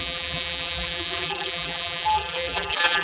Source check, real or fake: fake